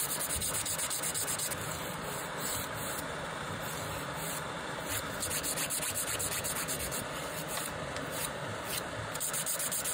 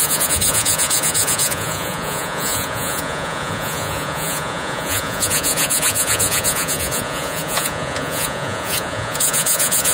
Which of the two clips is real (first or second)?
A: first